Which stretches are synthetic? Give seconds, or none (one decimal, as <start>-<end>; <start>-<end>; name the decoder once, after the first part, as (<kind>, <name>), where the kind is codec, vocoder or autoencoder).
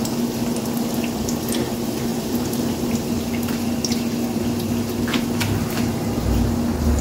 2.1-3.2 (vocoder, BigVGAN v2)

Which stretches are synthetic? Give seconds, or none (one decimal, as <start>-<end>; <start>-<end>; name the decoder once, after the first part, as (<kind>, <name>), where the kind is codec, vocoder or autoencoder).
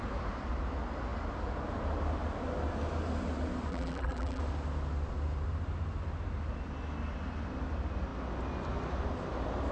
3.7-4.4 (vocoder, BigVGAN v2)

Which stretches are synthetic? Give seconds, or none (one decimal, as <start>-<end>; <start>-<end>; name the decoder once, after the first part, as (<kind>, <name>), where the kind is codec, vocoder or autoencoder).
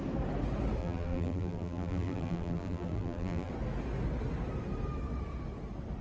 0.8-3.5 (vocoder, BigVGAN v2)